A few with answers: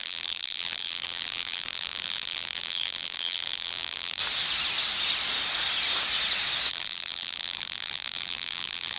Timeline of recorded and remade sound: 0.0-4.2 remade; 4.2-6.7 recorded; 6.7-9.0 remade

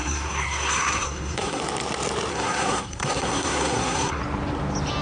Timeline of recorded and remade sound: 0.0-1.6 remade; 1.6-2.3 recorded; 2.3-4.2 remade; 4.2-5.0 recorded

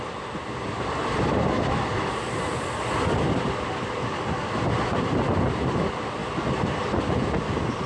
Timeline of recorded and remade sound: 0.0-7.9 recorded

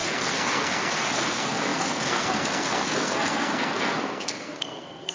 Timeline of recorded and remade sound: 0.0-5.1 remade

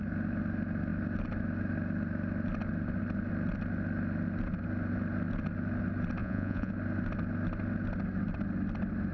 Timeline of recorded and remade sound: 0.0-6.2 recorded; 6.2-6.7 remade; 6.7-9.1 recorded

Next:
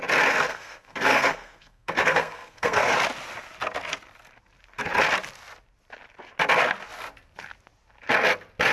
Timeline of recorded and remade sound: 0.0-0.5 recorded; 0.5-2.9 remade; 2.9-8.7 recorded

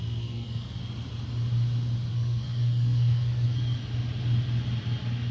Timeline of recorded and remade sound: 0.0-0.8 remade; 0.8-2.1 recorded; 2.1-3.8 remade; 3.8-5.3 recorded